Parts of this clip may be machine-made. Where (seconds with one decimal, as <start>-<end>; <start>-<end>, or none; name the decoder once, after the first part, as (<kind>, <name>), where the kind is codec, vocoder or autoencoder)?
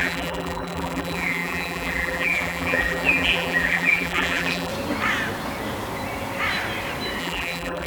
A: 0.0-4.7 (vocoder, BigVGAN v2); 7.2-7.9